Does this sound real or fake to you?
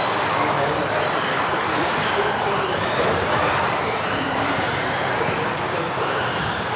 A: fake